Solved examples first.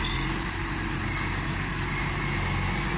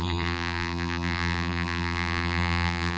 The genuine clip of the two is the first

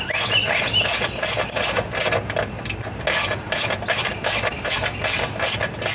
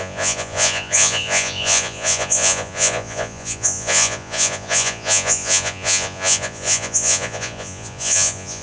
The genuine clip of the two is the first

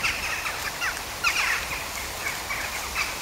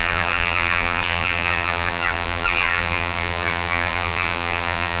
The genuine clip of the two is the first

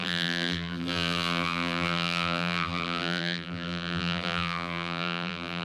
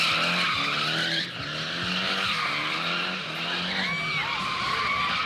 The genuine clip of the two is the second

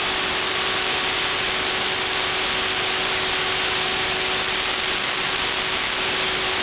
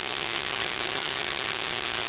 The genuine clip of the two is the first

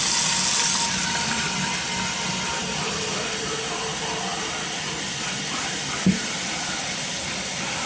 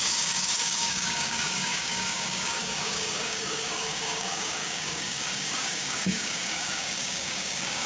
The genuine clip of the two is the first